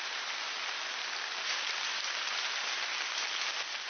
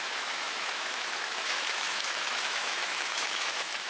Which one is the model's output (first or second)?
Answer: second